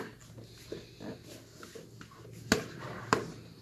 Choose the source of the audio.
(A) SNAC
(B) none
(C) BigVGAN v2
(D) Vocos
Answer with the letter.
B